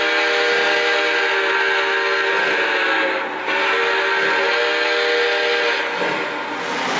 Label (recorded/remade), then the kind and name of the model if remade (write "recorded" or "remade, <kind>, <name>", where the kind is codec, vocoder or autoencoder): recorded